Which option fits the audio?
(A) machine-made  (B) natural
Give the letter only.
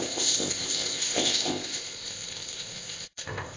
A